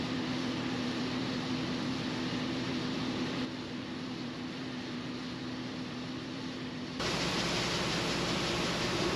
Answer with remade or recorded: remade